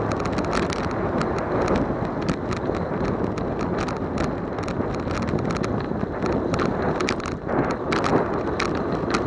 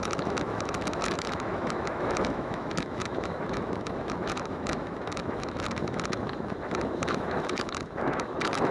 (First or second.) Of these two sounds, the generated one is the second